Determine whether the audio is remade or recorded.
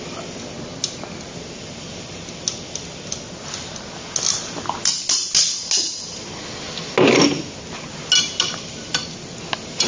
recorded